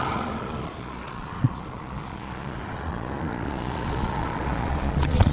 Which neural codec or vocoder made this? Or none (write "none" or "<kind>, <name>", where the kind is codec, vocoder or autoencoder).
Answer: vocoder, Vocos